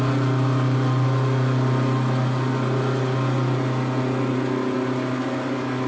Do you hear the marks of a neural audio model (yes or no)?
no